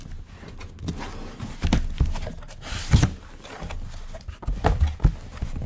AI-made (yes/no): no